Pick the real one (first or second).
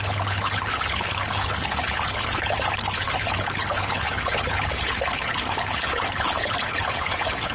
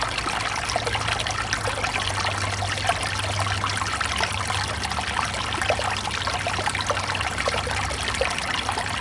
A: second